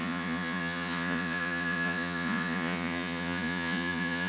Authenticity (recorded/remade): remade